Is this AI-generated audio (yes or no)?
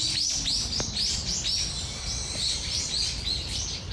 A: yes